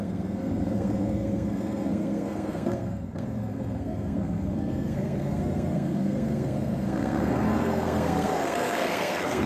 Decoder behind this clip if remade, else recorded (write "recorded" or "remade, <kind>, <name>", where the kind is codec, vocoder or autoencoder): remade, codec, SNAC